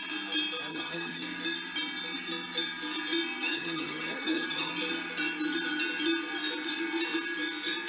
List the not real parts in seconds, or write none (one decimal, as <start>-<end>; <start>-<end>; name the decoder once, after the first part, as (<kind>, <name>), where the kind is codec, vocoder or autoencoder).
0.7-1.2 (vocoder, HiFi-GAN); 3.4-4.7